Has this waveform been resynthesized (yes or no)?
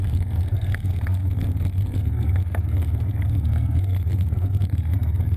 yes